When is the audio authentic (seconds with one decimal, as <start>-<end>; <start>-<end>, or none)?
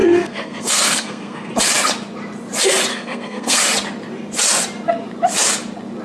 1.5-2.9; 3.6-6.0